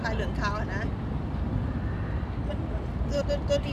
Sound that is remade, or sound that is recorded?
recorded